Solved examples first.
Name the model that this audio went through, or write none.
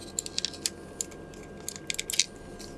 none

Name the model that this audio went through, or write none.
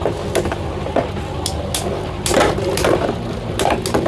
none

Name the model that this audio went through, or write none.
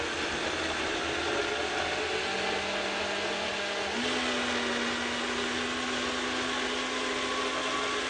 none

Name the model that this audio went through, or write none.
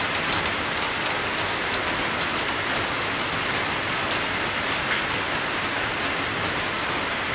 none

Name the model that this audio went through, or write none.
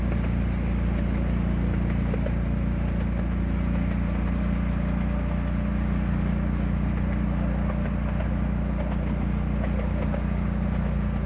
none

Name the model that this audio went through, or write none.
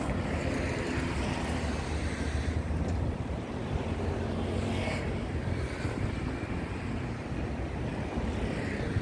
none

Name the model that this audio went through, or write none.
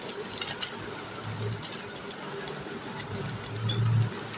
none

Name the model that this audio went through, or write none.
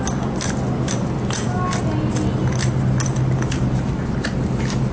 none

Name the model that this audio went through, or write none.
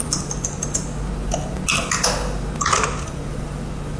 none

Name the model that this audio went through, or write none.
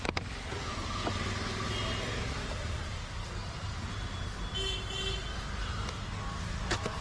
none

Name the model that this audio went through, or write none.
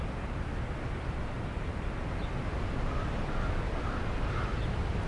none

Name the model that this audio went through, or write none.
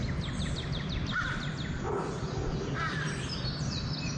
none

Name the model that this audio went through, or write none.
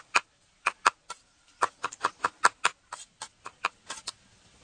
none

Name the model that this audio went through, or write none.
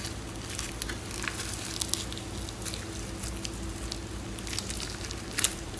none